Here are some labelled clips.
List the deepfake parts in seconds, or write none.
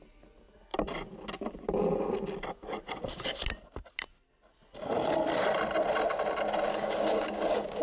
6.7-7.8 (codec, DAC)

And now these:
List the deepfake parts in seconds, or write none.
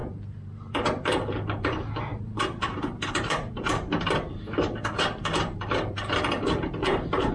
0.0-7.3 (vocoder, BigVGAN v2)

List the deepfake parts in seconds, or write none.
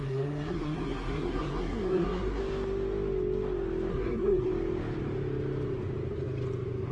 0.0-2.4 (codec, SNAC); 3.9-4.5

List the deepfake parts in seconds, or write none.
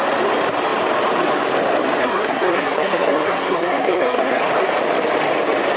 2.0-4.4 (codec, SNAC)